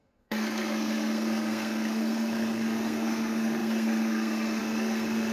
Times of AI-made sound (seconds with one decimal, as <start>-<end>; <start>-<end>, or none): 0.0-5.3